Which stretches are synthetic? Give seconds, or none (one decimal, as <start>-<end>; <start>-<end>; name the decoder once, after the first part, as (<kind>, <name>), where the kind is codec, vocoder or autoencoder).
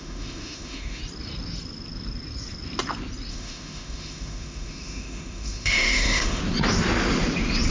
0.0-1.0 (autoencoder, DAC-VAE); 3.3-6.4